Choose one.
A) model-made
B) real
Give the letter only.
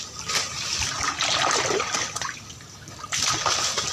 B